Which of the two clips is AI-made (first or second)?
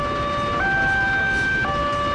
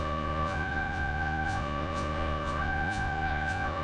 second